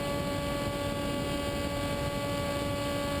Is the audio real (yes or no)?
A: yes